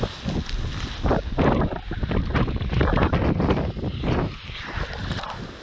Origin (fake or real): real